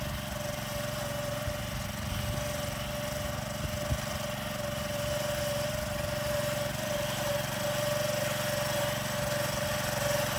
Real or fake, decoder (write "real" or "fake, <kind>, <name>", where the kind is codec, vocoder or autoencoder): real